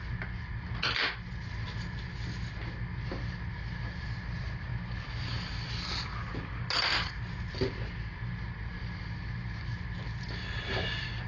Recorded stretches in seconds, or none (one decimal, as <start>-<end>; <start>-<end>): 0.0-11.3

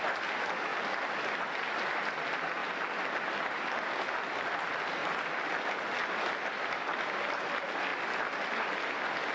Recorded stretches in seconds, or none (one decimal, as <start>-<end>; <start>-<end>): 0.0-9.3

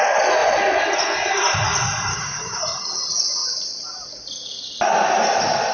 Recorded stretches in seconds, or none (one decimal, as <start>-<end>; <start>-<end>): 0.0-2.1; 2.6-5.7

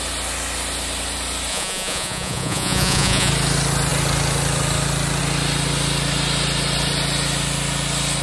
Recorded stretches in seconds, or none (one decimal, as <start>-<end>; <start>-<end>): 0.0-1.5; 3.3-8.2

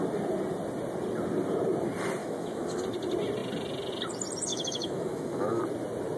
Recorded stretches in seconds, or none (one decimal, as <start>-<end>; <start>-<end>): 0.0-2.2; 2.8-4.5; 5.6-6.2

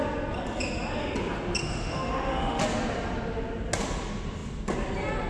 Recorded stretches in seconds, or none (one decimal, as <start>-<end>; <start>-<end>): 0.0-1.6; 2.6-5.3

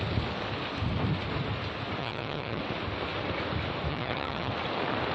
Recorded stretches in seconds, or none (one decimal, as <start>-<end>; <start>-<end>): 0.0-2.0; 2.6-3.9; 4.5-5.1

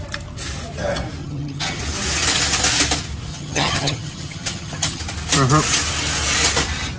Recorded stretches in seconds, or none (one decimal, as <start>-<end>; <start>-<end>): 0.0-1.2; 1.8-3.3; 5.0-7.0